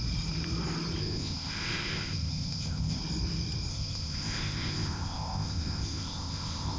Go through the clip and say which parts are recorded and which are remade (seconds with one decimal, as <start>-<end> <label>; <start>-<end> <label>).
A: 0.0-1.0 recorded; 1.0-3.0 remade; 3.0-3.7 recorded; 3.7-6.8 remade